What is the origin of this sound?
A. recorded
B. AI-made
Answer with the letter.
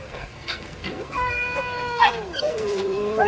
B